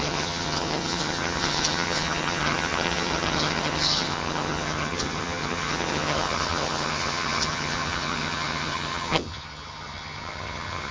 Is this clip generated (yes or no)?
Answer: yes